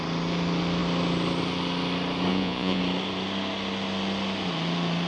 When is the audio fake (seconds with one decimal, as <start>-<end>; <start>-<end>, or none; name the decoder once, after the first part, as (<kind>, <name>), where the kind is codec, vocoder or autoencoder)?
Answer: 2.3-2.8 (vocoder, Vocos)